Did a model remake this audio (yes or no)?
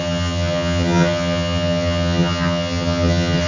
yes